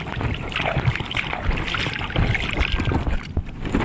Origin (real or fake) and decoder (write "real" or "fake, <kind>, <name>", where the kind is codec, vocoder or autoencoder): real